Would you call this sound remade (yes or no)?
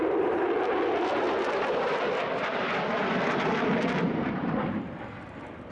no